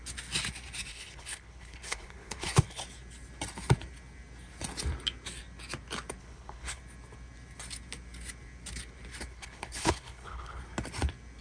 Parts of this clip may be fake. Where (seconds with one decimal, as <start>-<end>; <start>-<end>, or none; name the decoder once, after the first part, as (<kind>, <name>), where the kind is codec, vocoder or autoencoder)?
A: 0.9-2.8 (codec, HILCodec); 6.2-6.8; 9.3-10.6